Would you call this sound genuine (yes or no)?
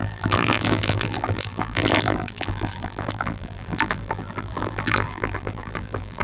no